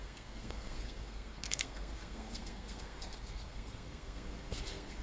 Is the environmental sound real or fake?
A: fake